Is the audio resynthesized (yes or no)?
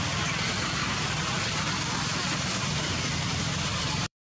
yes